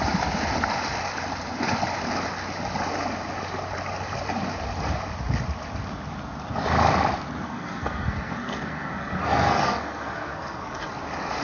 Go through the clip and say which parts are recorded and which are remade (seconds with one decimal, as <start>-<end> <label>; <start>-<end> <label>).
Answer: 0.0-7.4 recorded; 7.4-10.9 remade; 10.9-11.4 recorded